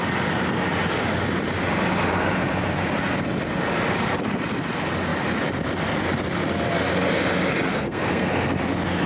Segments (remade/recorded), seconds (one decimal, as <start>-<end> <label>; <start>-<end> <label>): 0.0-7.7 recorded; 7.7-8.3 remade; 8.3-9.1 recorded